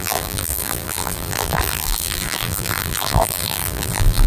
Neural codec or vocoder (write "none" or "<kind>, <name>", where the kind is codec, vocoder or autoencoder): vocoder, BigVGAN v2